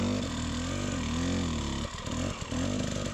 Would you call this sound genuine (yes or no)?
yes